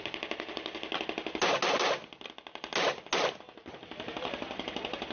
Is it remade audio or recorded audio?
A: recorded